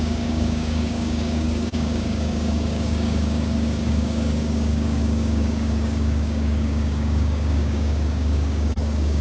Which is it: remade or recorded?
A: remade